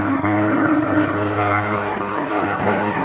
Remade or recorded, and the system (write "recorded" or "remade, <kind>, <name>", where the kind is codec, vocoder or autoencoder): remade, codec, SNAC